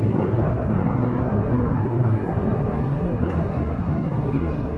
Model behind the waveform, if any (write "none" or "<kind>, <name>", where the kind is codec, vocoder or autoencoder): codec, SNAC